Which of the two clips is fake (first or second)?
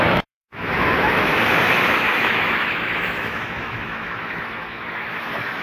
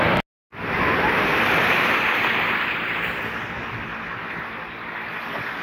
first